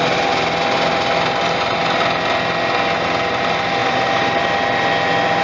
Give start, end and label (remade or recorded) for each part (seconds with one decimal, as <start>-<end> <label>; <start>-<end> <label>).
0.0-3.8 recorded; 3.8-4.4 remade; 4.4-5.4 recorded